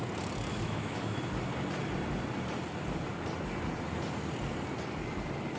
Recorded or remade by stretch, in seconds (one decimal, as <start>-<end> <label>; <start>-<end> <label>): 0.0-0.5 recorded; 0.5-1.2 remade; 1.2-5.6 recorded